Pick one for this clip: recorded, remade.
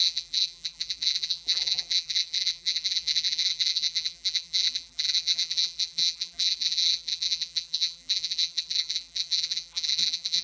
remade